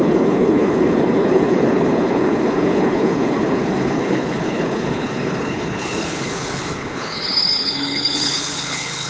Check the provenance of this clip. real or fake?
fake